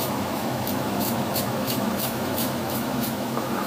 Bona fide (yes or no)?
no